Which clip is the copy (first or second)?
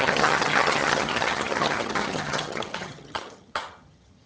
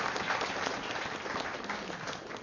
first